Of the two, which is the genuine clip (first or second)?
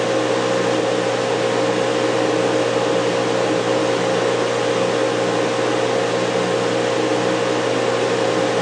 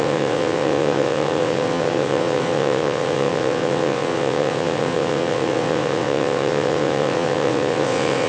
first